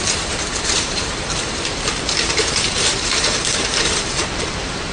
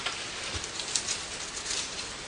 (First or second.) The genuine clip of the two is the second